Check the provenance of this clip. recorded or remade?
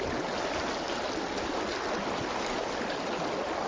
recorded